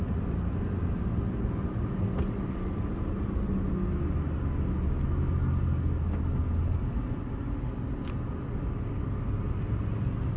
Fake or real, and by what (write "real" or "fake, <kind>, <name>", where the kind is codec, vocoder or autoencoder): real